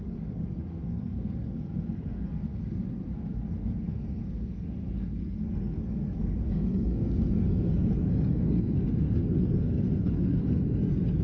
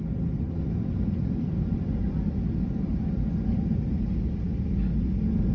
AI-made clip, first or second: first